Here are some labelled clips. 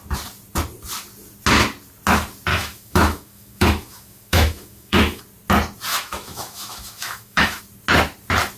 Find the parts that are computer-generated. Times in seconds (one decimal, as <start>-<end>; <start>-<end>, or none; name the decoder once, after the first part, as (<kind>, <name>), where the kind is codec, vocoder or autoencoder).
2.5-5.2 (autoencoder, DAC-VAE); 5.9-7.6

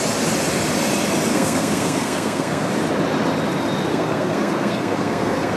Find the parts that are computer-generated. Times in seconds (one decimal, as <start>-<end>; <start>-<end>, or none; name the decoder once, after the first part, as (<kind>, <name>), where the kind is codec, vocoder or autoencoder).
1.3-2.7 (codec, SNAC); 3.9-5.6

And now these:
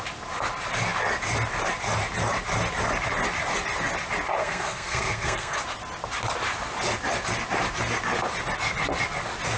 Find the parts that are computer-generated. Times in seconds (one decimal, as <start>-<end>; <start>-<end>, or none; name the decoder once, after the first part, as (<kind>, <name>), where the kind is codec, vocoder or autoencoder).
4.4-5.6 (codec, SNAC)

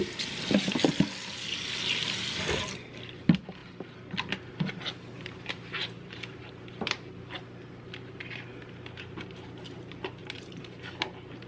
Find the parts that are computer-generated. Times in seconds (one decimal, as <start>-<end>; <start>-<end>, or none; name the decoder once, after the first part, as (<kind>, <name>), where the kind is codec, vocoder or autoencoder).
5.8-6.4 (vocoder, BigVGAN v2); 10.2-10.9